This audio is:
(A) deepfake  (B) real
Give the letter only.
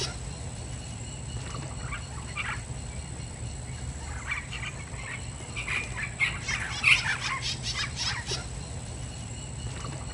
B